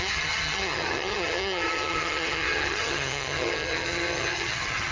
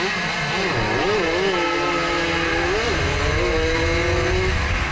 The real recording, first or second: second